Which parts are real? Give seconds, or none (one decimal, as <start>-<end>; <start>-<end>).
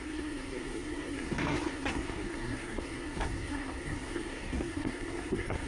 none